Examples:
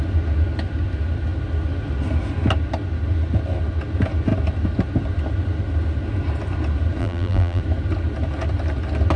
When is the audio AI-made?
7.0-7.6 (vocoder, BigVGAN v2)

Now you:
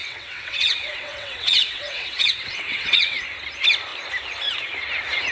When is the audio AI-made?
0.0-3.2 (vocoder, WaveNeXt)